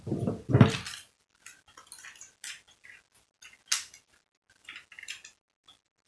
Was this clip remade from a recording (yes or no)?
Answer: no